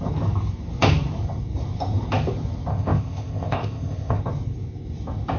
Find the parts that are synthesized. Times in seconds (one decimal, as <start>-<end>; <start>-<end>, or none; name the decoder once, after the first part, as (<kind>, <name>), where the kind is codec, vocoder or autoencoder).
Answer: 2.7-4.2 (codec, ZipCodec)